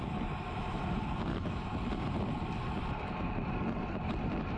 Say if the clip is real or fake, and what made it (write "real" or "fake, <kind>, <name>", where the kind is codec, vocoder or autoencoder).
real